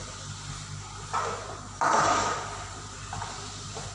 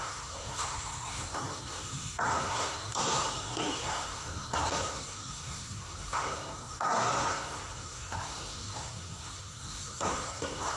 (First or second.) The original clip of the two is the first